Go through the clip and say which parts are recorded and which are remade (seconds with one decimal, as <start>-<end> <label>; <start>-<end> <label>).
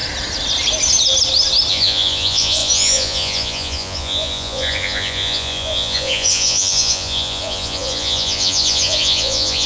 0.0-1.7 recorded; 1.7-9.7 remade